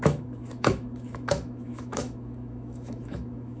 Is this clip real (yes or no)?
no